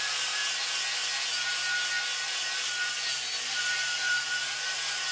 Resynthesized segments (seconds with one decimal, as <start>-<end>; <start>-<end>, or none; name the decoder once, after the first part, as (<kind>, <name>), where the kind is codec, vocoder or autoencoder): 0.0-0.4 (vocoder, BigVGAN v2); 3.5-5.1